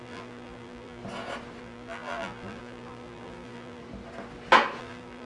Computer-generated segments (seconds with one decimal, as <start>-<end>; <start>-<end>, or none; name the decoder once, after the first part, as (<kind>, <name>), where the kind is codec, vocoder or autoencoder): 0.0-1.0 (vocoder, BigVGAN v2); 1.6-3.8; 4.8-5.2